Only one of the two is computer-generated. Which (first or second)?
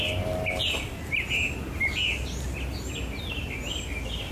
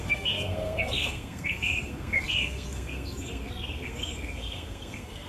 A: second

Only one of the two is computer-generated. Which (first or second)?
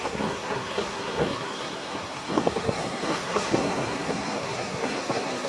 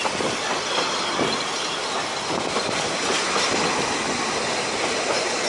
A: first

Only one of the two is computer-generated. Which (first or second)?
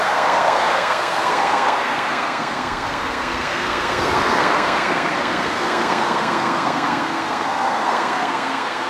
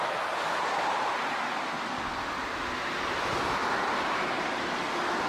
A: first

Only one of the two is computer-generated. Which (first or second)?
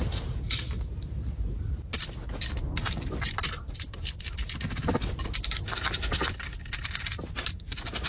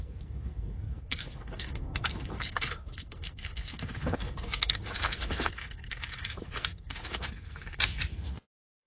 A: second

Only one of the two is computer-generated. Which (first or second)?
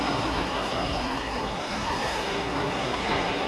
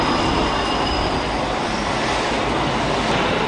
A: first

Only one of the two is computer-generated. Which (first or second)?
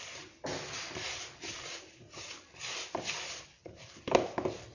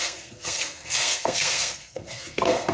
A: second